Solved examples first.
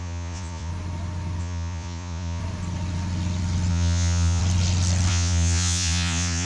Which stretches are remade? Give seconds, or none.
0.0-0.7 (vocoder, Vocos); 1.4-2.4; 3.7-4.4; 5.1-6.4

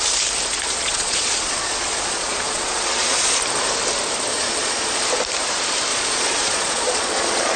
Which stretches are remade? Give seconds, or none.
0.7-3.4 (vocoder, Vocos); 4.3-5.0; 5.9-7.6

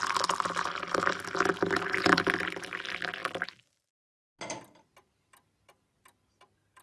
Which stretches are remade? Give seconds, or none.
none